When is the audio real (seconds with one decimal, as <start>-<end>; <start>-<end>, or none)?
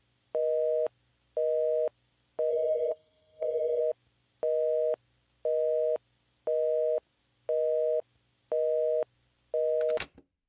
0.0-2.5; 3.8-10.5